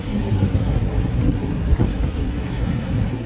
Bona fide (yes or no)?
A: no